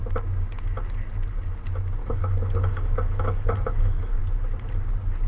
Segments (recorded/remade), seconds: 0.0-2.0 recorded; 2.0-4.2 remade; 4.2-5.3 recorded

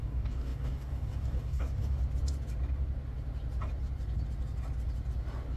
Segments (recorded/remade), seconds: 0.0-2.0 remade; 2.0-5.6 recorded